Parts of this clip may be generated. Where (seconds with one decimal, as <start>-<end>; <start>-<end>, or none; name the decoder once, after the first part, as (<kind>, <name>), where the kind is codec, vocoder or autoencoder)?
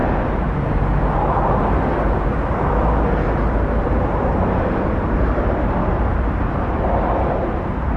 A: none